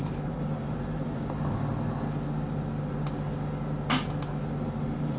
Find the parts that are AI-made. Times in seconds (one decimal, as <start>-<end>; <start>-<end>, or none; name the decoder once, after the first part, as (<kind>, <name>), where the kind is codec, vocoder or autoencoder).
0.0-1.7 (vocoder, BigVGAN v2); 4.8-5.2